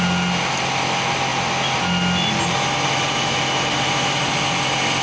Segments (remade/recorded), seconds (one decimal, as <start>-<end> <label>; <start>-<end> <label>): 0.0-5.0 recorded